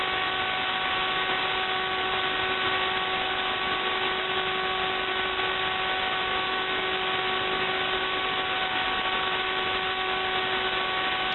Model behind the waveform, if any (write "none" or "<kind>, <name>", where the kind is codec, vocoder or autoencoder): none